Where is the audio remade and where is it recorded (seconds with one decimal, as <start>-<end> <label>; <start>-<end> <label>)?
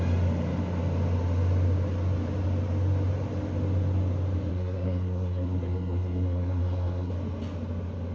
0.0-4.5 recorded; 4.5-7.1 remade; 7.1-8.1 recorded